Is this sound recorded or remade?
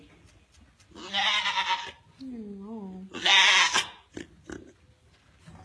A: recorded